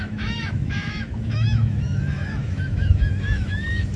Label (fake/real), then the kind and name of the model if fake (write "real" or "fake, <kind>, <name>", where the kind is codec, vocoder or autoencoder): fake, autoencoder, DAC-VAE